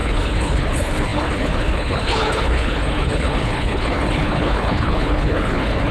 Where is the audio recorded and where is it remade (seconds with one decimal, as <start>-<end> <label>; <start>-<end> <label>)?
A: 0.0-5.9 remade